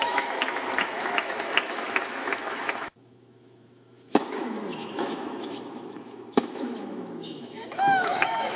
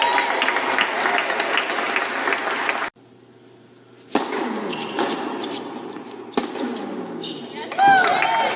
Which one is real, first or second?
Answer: second